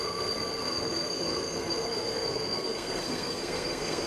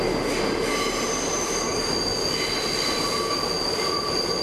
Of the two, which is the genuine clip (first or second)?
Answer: second